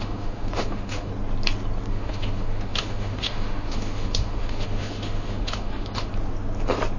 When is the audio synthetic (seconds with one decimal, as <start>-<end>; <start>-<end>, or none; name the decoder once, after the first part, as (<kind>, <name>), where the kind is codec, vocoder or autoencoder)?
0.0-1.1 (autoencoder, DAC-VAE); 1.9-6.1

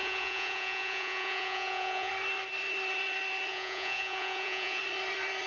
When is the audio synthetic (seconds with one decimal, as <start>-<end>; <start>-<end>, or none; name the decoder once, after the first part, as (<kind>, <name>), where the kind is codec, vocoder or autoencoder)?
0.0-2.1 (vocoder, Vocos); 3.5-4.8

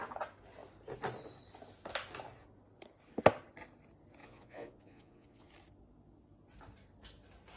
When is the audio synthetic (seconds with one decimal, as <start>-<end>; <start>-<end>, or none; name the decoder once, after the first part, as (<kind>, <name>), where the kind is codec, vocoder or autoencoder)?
4.2-5.5 (vocoder, Vocos)